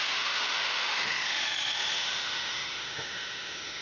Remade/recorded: remade